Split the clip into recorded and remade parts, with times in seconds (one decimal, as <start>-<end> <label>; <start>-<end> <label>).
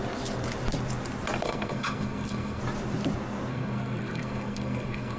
0.0-1.4 recorded; 1.4-2.6 remade; 2.6-3.5 recorded; 3.5-5.2 remade